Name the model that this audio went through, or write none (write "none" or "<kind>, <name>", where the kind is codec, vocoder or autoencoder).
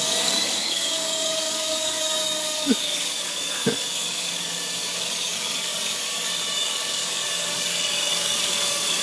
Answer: codec, DAC